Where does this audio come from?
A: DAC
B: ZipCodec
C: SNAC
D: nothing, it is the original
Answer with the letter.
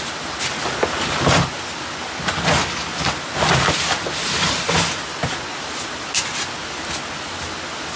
D